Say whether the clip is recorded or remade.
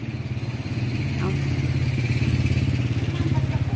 recorded